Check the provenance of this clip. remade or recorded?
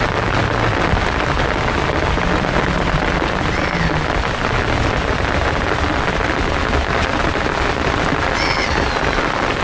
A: recorded